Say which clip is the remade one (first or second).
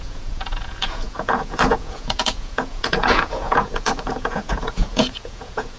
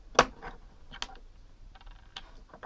first